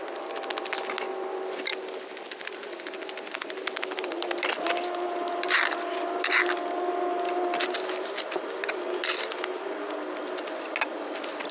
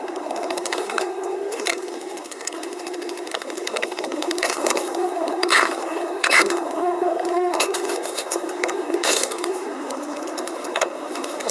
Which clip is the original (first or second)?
first